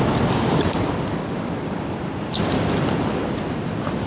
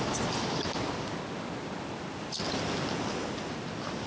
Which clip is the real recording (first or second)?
second